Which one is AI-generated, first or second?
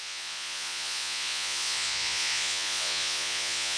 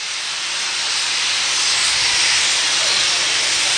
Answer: first